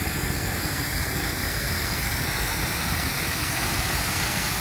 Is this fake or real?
fake